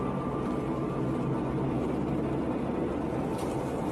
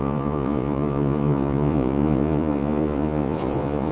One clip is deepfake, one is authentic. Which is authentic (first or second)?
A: first